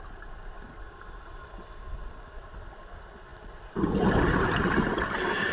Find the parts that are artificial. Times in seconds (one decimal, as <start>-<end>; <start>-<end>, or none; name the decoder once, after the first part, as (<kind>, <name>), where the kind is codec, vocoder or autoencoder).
none